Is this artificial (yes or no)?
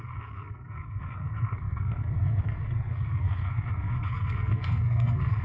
yes